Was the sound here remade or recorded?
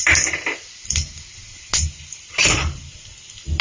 recorded